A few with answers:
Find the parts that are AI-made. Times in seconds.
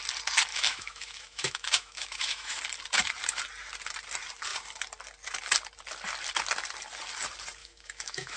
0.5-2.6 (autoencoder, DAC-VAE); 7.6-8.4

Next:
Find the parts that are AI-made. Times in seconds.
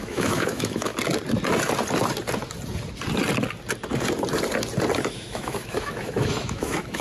0.0-0.9 (autoencoder, DAC-VAE); 5.1-7.0